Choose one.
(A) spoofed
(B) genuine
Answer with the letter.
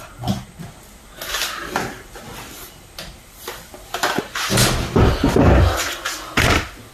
B